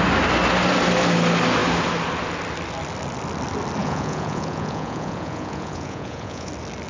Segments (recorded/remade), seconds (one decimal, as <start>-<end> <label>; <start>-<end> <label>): 0.0-3.8 recorded; 3.8-6.5 remade; 6.5-6.9 recorded